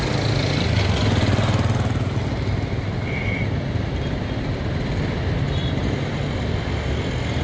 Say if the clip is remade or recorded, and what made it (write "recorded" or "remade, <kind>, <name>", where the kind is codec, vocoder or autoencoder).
recorded